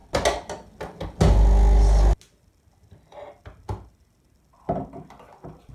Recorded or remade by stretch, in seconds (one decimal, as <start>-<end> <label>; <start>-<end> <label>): 0.0-5.7 recorded